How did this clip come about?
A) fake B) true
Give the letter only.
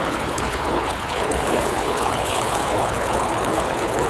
A